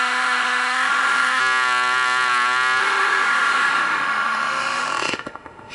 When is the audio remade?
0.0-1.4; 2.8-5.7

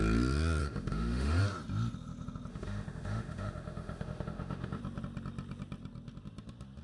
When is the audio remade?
0.6-1.4; 2.5-4.8

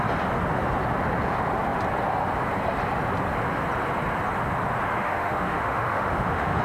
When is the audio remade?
5.0-6.6

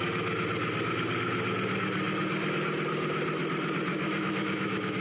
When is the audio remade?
3.9-5.0

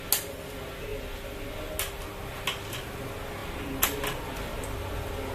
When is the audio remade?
none